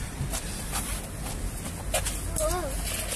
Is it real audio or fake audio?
real